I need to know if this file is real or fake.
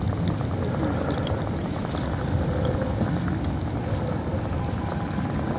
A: real